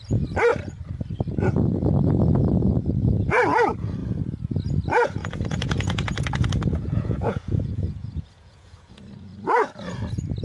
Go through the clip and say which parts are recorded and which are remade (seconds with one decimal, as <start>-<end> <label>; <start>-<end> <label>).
0.0-5.2 recorded; 5.2-9.0 remade; 9.0-10.4 recorded